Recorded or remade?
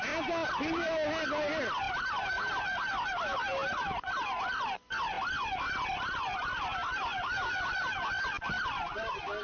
recorded